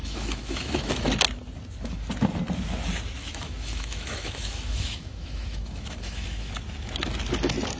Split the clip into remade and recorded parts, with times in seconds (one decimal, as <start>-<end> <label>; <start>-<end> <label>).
0.0-1.1 remade; 1.1-3.2 recorded; 3.2-6.5 remade; 6.5-7.8 recorded